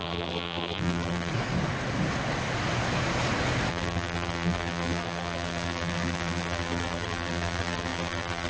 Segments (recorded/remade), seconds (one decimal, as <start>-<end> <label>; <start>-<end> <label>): 0.0-1.3 remade; 1.3-3.7 recorded; 3.7-8.5 remade